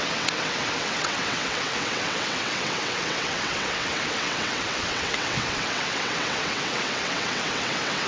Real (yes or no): no